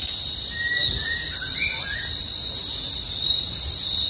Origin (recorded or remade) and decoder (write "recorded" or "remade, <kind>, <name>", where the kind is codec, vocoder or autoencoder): recorded